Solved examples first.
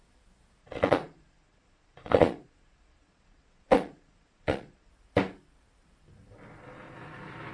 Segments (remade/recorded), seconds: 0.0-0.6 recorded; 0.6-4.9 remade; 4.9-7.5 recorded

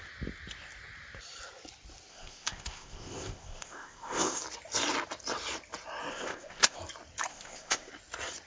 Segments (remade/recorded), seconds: 0.0-2.1 recorded; 2.1-4.4 remade; 4.4-6.1 recorded; 6.1-6.8 remade; 6.8-7.3 recorded; 7.3-7.9 remade; 7.9-8.5 recorded

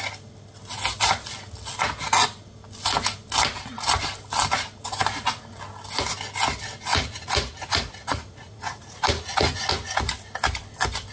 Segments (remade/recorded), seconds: 0.0-6.9 recorded; 6.9-9.7 remade; 9.7-11.1 recorded

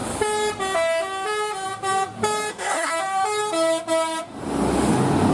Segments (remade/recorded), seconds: 0.0-2.5 recorded; 2.5-2.9 remade; 2.9-5.3 recorded

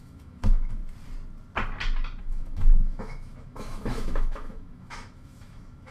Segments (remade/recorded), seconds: 0.0-0.8 remade; 0.8-2.2 recorded; 2.2-5.9 remade

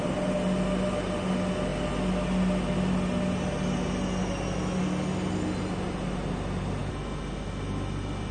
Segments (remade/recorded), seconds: 0.0-8.3 recorded

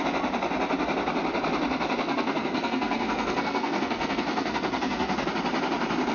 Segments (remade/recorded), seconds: 0.0-2.0 recorded; 2.0-5.3 remade; 5.3-6.1 recorded

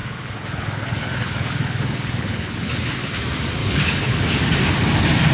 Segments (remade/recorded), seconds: 0.0-3.2 remade; 3.2-3.6 recorded; 3.6-4.2 remade; 4.2-5.3 recorded